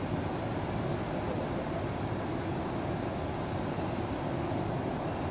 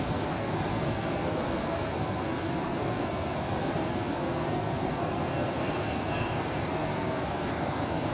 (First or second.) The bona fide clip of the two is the first